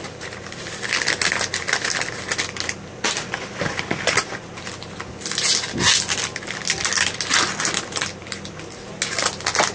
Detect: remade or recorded recorded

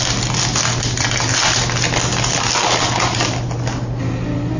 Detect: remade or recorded recorded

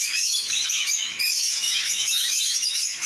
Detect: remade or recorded remade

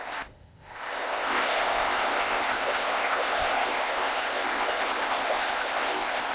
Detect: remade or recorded remade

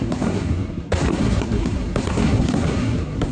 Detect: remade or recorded remade